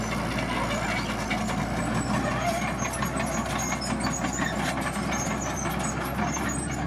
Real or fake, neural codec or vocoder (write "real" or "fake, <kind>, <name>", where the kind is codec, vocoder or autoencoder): real